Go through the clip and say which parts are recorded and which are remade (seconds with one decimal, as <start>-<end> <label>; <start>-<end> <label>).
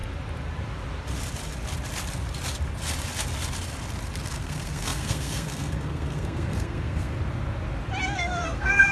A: 0.0-4.3 recorded; 4.3-7.2 remade; 7.2-8.0 recorded; 8.0-8.9 remade